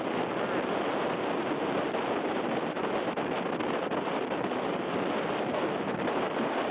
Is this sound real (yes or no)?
yes